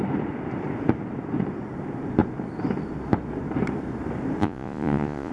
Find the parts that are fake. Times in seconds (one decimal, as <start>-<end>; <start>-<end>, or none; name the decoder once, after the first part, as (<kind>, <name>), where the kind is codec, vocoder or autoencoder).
4.4-5.3 (vocoder, Vocos)